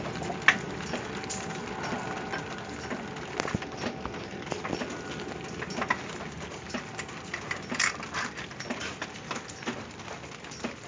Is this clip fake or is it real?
real